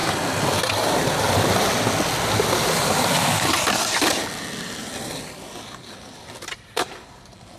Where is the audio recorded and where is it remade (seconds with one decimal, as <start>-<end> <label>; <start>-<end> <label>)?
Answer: 0.0-7.6 remade